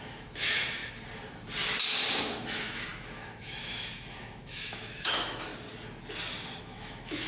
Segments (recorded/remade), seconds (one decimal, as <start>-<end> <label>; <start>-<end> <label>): 0.0-0.8 remade; 0.8-2.2 recorded; 2.2-5.5 remade; 5.5-6.6 recorded; 6.6-7.3 remade